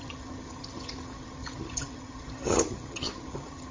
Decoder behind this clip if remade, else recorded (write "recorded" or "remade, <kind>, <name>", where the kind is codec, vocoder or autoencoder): remade, vocoder, HiFi-GAN